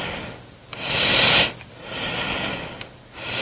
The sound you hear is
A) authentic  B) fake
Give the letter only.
A